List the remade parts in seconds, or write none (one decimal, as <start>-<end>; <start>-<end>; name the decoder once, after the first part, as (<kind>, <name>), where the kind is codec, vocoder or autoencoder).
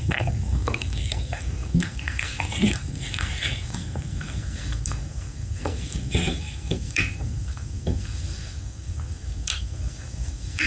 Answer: 0.0-10.7 (codec, SNAC)